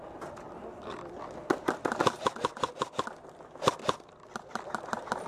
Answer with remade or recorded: recorded